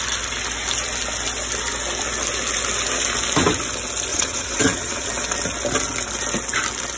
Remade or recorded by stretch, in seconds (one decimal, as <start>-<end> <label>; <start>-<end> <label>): 0.0-4.1 recorded; 4.1-5.1 remade; 5.1-7.0 recorded